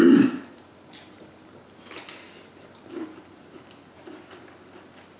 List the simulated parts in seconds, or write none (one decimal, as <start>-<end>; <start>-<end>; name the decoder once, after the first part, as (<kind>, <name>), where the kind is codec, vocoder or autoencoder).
none